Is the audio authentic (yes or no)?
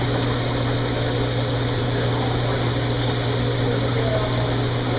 yes